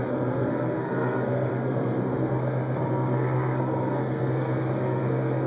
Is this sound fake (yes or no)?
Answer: yes